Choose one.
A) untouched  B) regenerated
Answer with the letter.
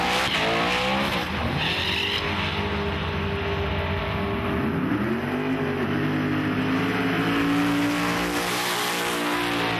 A